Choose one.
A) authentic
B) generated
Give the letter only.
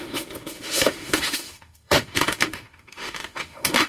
B